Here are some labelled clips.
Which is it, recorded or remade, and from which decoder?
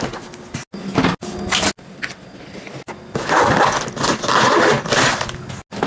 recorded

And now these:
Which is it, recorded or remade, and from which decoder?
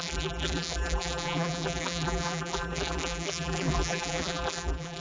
remade, vocoder, BigVGAN v2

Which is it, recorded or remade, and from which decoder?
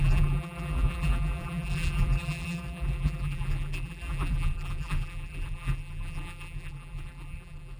remade, vocoder, BigVGAN v2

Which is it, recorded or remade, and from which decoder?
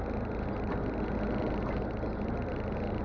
recorded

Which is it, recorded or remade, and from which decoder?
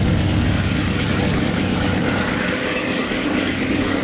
remade, codec, DAC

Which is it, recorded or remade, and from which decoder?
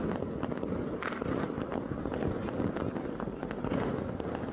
recorded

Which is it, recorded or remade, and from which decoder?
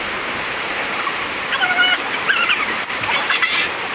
remade, vocoder, BigVGAN v2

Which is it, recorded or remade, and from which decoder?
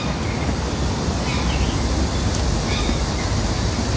recorded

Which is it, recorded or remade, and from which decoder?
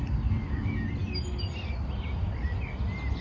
recorded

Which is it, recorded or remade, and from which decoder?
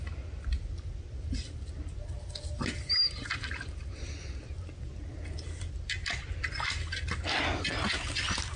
recorded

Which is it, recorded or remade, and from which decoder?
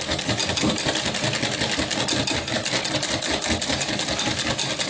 recorded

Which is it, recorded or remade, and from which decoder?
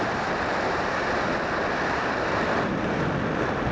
remade, vocoder, BigVGAN v2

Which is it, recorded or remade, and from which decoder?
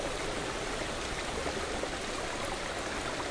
recorded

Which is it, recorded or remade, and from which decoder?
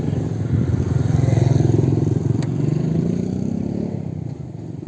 recorded